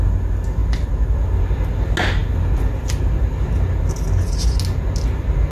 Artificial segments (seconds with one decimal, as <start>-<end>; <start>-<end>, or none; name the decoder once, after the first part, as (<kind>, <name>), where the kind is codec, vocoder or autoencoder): none